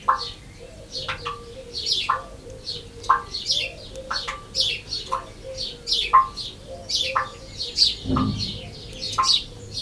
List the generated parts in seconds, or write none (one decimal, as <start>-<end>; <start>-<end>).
1.9-2.4; 6.8-7.7